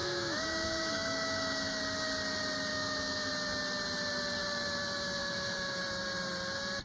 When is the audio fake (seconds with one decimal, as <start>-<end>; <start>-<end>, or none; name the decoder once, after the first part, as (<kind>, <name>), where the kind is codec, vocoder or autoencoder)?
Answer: 0.0-1.8 (autoencoder, DAC-VAE); 2.7-3.3; 5.2-5.8